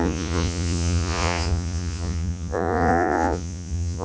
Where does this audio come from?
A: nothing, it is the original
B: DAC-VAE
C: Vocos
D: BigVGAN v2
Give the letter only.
C